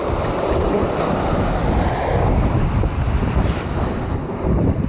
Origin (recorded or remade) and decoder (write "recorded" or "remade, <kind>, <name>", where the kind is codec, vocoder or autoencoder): remade, vocoder, BigVGAN v2